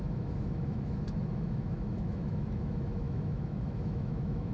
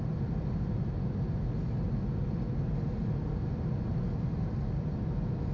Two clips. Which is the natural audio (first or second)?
second